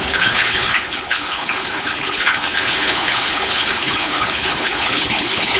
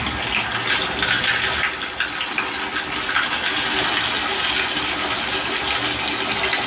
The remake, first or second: first